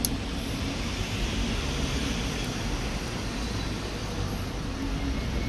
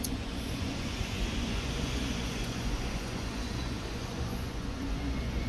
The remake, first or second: second